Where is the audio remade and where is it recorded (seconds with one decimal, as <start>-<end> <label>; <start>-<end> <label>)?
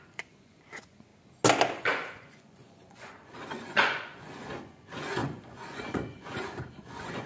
0.0-1.1 remade; 1.1-1.7 recorded; 1.7-7.3 remade